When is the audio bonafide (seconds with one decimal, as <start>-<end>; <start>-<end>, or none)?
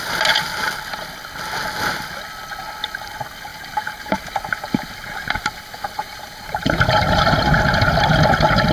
0.0-3.5; 7.3-8.7